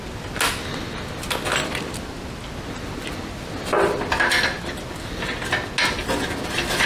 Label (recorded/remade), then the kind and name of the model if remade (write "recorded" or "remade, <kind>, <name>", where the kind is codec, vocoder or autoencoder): recorded